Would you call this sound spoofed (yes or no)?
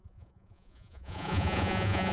yes